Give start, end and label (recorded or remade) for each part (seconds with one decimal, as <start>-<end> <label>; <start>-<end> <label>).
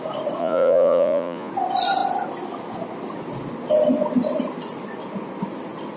0.0-0.4 recorded; 0.4-1.5 remade; 1.5-6.0 recorded